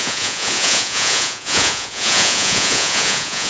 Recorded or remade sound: remade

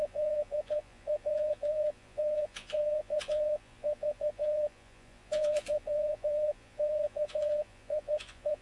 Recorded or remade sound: remade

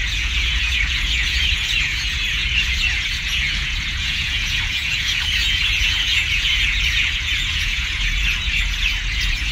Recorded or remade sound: remade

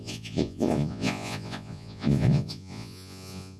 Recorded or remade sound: remade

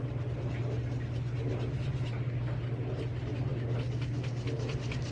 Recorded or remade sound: recorded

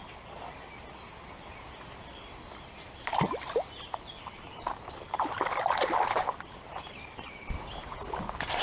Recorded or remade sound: recorded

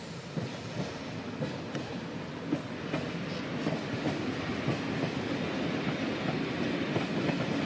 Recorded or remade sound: recorded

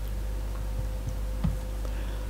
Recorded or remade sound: recorded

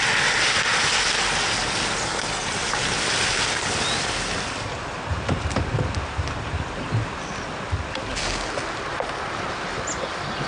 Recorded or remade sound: recorded